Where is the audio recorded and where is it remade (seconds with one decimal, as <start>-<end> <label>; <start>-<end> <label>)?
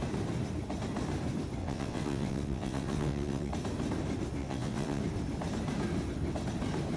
0.0-1.6 recorded; 1.6-3.5 remade; 3.5-4.4 recorded; 4.4-5.0 remade; 5.0-7.0 recorded